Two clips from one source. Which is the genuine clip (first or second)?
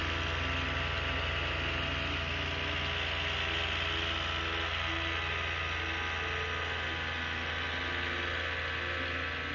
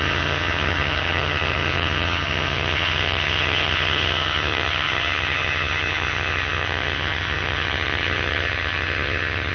first